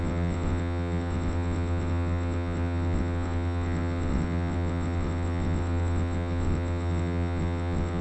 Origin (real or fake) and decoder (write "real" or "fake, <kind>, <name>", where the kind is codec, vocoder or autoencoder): fake, vocoder, WaveNeXt